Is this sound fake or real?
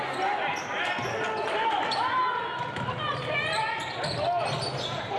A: real